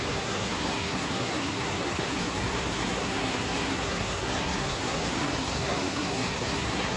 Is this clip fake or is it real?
fake